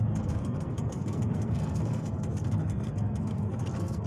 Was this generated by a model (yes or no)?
yes